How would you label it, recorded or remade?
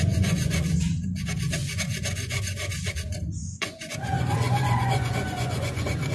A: remade